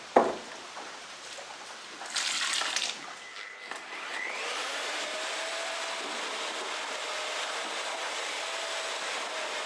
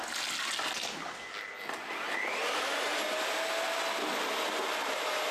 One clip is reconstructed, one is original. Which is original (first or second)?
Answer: second